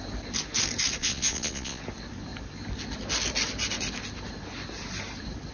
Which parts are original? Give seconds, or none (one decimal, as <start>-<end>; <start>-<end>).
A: 0.0-1.0; 1.8-5.5